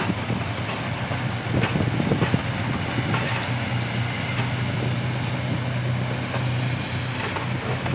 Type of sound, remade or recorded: recorded